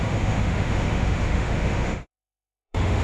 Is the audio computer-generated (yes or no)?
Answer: yes